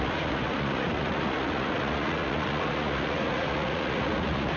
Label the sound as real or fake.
fake